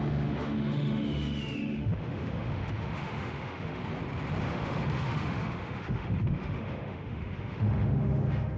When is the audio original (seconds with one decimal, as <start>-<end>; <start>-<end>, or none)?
3.8-4.4